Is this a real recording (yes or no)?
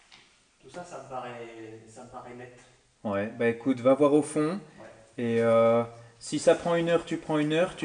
yes